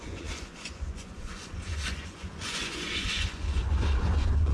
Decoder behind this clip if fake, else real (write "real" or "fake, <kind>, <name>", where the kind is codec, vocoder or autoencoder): fake, vocoder, Vocos